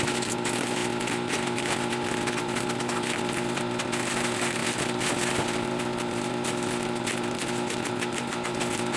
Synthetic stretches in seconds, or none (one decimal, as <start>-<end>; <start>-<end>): none